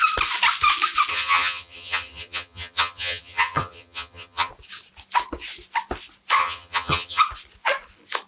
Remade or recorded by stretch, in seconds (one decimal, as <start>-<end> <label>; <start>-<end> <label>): 0.0-1.1 recorded; 1.1-4.5 remade; 4.5-6.4 recorded; 6.4-7.2 remade; 7.2-8.3 recorded